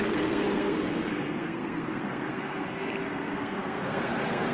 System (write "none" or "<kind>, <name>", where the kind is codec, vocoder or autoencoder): codec, SNAC